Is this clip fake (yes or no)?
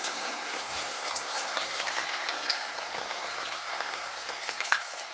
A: yes